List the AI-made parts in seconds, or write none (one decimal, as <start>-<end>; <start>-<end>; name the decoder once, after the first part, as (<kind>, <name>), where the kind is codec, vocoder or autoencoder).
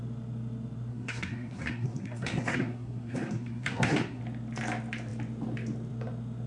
0.9-4.2 (codec, SNAC)